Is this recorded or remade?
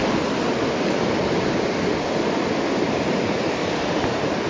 recorded